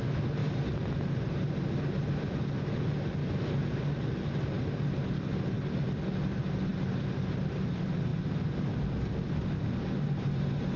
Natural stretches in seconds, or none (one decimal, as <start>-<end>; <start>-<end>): 0.0-10.8